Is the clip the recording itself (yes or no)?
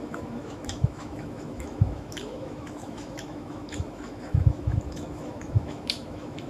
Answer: no